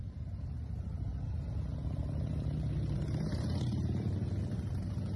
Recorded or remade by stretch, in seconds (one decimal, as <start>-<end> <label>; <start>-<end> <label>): 0.0-5.2 remade